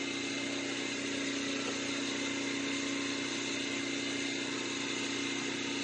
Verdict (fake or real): real